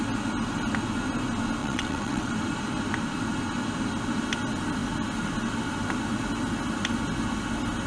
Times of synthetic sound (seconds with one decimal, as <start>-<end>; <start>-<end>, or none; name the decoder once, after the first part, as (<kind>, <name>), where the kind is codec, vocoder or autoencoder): 1.6-2.3 (vocoder, WaveNeXt)